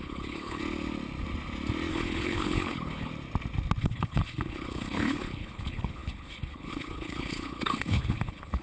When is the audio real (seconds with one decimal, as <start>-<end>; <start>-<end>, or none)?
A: 0.6-1.9; 3.1-3.8